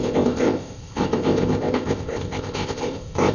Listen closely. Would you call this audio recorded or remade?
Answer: remade